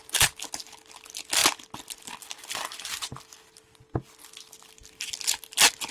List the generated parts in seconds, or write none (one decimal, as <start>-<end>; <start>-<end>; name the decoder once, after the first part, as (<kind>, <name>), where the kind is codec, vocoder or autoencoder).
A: none